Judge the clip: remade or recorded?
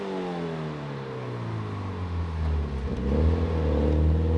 recorded